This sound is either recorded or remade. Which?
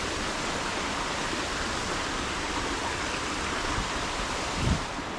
remade